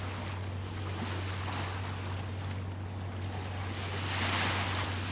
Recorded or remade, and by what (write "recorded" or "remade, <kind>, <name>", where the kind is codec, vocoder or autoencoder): recorded